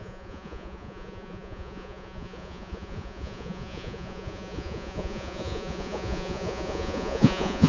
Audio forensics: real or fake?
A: fake